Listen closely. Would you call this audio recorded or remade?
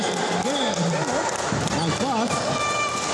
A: recorded